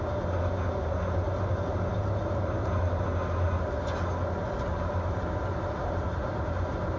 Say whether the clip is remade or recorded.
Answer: recorded